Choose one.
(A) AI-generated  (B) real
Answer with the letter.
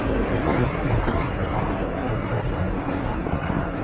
A